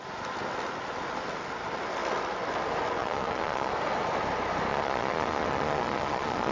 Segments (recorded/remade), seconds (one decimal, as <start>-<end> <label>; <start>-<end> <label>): 0.0-3.0 recorded; 3.0-3.7 remade; 3.7-4.7 recorded; 4.7-6.5 remade